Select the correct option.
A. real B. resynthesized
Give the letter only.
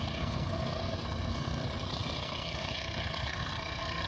B